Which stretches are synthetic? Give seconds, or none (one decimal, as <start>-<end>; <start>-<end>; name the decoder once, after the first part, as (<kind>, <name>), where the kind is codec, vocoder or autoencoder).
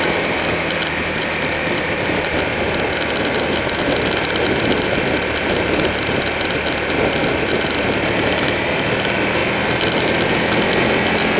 none